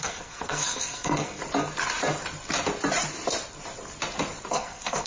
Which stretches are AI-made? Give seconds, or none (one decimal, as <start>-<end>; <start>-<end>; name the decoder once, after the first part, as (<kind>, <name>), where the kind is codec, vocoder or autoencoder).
0.0-1.4 (codec, SNAC); 4.5-5.1